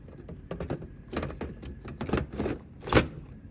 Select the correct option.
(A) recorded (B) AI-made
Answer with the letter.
A